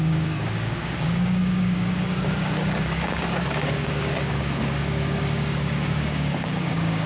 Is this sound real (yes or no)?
no